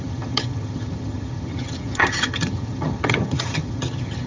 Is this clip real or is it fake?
fake